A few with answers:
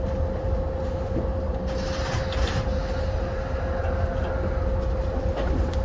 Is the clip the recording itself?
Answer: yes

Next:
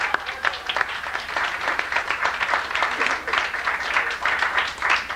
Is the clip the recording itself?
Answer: no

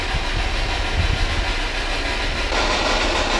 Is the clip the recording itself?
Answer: yes